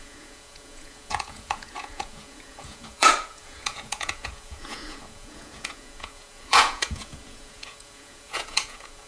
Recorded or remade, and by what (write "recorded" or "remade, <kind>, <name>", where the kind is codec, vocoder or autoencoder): remade, vocoder, Vocos